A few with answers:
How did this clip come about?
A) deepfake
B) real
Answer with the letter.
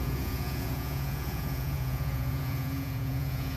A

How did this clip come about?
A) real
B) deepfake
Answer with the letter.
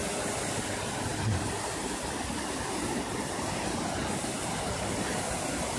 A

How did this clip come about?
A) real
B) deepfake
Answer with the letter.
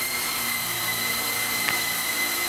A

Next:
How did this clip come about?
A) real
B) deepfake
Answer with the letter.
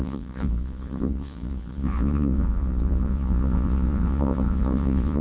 B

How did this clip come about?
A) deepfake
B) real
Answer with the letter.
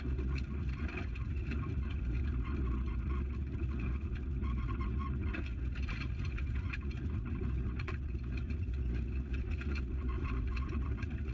A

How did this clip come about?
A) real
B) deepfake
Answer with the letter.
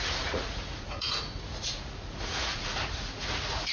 B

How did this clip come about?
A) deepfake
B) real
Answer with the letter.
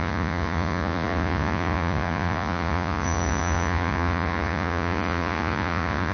A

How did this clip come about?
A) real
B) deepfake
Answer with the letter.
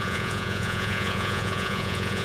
B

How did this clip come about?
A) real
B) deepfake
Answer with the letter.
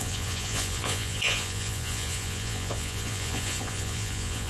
B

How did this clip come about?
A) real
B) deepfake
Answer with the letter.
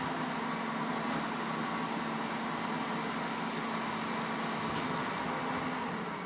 A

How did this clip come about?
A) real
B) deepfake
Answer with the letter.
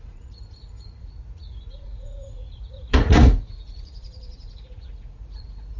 B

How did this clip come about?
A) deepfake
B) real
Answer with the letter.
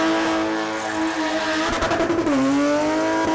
B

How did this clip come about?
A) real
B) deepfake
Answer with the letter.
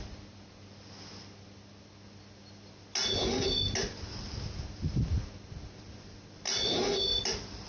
A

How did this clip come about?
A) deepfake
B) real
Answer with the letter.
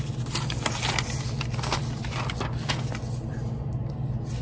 B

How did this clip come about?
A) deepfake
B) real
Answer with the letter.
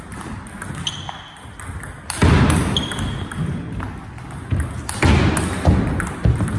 B